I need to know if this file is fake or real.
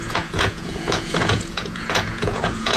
fake